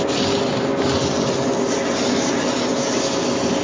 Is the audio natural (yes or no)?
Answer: yes